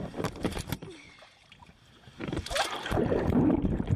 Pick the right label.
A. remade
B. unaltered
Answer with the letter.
A